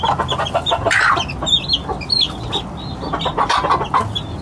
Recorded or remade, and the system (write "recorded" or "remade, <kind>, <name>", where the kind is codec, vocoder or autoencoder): recorded